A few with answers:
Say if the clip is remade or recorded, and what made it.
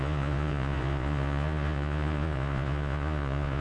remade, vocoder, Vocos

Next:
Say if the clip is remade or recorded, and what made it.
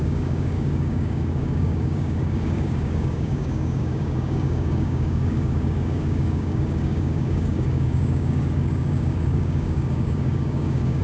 remade, codec, DAC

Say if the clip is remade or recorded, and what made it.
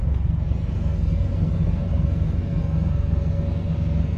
remade, codec, SNAC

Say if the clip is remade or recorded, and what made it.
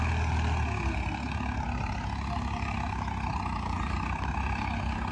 recorded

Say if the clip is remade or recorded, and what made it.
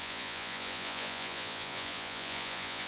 remade, vocoder, Vocos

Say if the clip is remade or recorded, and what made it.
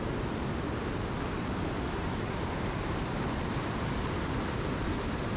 recorded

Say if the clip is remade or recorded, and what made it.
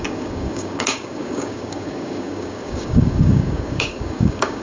remade, codec, DAC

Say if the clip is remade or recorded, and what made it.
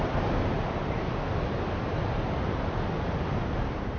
recorded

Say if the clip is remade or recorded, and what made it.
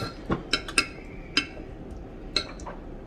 recorded